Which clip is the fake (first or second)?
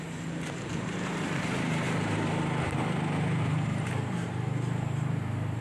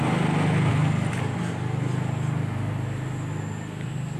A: first